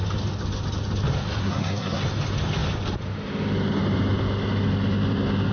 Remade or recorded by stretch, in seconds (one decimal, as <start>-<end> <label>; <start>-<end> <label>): 0.0-1.4 recorded; 1.4-2.0 remade; 2.0-5.5 recorded

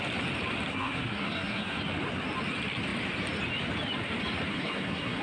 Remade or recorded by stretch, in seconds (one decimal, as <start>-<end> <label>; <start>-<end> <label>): 0.0-0.7 recorded; 0.7-1.8 remade; 1.8-4.5 recorded; 4.5-5.2 remade

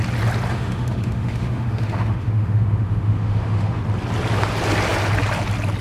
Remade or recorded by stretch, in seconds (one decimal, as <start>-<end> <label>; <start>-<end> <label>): 0.0-0.5 recorded; 0.5-3.8 remade; 3.8-5.8 recorded

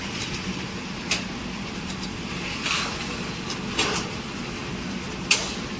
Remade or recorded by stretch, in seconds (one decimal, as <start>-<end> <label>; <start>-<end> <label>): 0.0-2.8 remade; 2.8-5.8 recorded

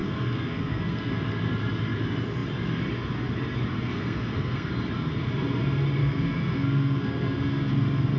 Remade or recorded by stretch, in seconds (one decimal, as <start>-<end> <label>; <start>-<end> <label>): 0.0-1.1 remade; 1.1-3.9 recorded; 3.9-4.7 remade; 4.7-6.0 recorded; 6.0-7.7 remade; 7.7-8.2 recorded

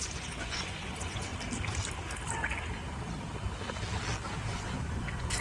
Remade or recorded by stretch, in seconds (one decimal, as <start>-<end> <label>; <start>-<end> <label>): 0.0-1.3 remade; 1.3-4.5 recorded; 4.5-5.4 remade

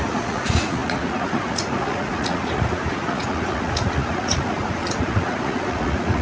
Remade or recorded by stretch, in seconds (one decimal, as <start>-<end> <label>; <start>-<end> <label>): 0.0-6.2 remade